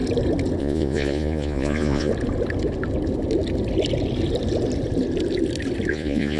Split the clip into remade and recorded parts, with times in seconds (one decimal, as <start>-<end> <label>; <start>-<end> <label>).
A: 0.0-0.6 recorded; 0.6-2.1 remade; 2.1-5.9 recorded; 5.9-6.4 remade

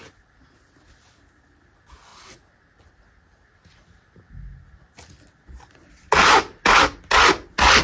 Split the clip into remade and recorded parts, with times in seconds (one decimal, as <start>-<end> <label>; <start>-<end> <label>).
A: 0.0-7.8 recorded